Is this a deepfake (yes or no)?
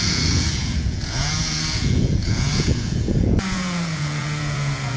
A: yes